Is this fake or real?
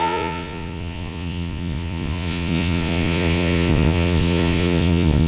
fake